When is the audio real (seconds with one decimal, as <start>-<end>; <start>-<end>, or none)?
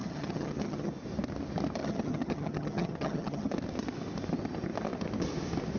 0.9-1.8; 3.5-5.8